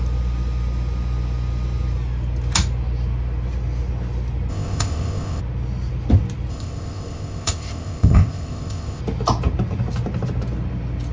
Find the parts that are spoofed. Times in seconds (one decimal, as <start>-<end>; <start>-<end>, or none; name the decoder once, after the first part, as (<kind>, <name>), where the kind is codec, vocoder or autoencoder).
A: 4.5-5.4 (codec, ZipCodec); 6.5-9.0